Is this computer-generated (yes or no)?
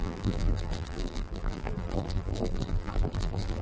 yes